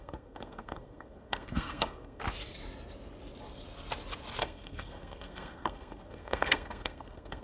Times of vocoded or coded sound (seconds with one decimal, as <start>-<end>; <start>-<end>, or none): 0.0-2.2; 4.4-7.4